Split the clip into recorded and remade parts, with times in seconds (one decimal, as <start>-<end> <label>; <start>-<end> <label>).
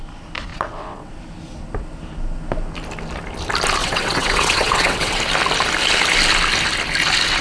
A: 0.0-0.5 recorded; 0.5-1.1 remade; 1.1-3.8 recorded; 3.8-5.2 remade; 5.2-7.4 recorded